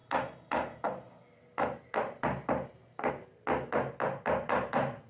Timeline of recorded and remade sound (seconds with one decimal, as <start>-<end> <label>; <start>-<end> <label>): 0.0-5.1 recorded